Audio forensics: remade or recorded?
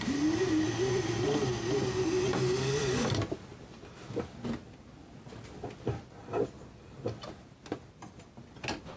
recorded